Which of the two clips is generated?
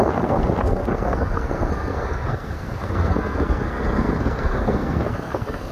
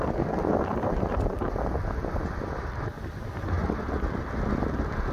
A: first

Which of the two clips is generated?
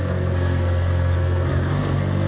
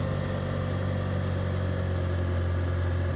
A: first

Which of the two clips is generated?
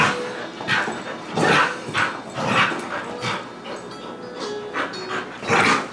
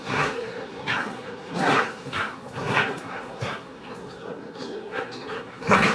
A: second